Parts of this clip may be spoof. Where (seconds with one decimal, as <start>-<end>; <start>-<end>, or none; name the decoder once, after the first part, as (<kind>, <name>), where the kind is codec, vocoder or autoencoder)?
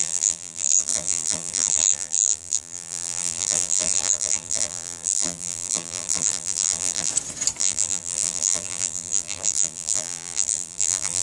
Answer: 0.0-7.1 (vocoder, BigVGAN v2); 7.6-11.2